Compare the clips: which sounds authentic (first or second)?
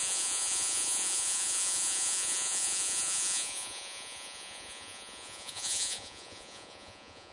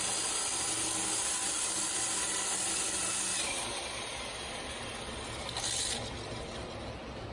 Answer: second